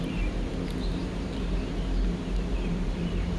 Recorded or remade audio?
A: remade